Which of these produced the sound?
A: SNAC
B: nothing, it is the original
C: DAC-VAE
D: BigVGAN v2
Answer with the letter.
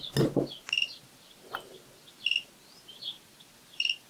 B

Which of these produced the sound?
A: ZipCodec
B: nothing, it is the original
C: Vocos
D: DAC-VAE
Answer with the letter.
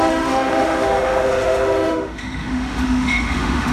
D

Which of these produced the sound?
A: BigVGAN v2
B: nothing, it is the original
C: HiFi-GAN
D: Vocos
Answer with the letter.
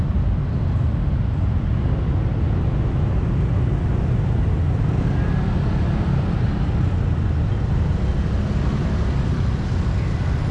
B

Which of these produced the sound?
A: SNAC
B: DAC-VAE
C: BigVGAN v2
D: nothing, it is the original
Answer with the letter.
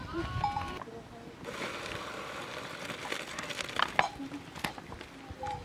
D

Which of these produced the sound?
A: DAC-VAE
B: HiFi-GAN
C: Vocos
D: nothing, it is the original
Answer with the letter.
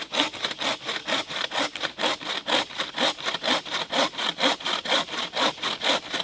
D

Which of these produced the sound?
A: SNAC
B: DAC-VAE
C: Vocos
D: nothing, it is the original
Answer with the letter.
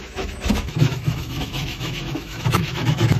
B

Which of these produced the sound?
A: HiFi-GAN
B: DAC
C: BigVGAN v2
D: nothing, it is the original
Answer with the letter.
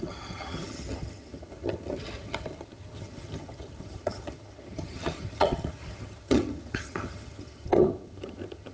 A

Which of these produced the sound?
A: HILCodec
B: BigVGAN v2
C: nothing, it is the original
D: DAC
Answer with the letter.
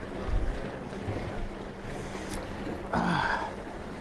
C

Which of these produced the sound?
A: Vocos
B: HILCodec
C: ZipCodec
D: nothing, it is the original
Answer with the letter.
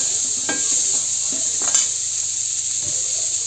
D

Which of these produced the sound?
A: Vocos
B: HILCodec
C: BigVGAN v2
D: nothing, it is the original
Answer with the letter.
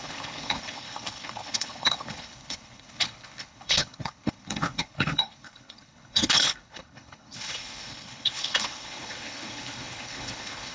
B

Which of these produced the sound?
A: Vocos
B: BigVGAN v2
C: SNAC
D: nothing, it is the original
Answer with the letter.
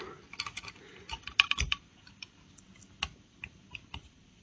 D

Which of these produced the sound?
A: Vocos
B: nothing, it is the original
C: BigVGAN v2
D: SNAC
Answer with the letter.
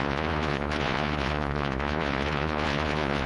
A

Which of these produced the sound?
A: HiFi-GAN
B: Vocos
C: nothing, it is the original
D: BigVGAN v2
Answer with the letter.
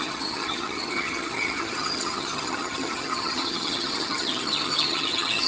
A